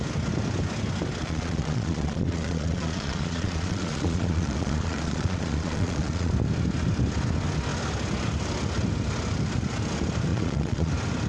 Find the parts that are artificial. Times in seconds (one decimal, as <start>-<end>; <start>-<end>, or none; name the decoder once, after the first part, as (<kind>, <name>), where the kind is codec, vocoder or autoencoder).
1.2-6.3 (vocoder, Vocos); 10.3-10.9